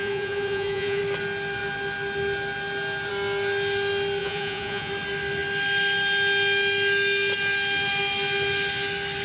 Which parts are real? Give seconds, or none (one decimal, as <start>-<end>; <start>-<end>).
1.0-4.2; 4.9-9.2